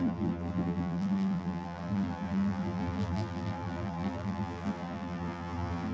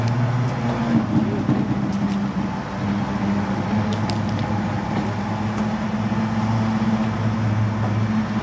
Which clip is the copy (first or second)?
first